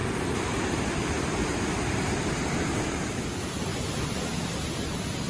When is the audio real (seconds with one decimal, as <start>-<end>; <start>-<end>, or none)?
3.2-5.3